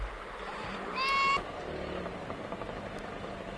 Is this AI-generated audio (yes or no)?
no